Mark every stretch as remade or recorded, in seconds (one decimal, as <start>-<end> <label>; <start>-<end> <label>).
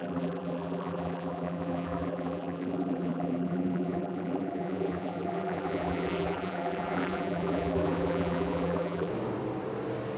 0.0-9.1 remade; 9.1-10.2 recorded